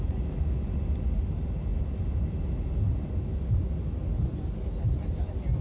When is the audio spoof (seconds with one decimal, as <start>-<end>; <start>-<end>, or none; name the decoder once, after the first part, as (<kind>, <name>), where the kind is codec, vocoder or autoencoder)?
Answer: none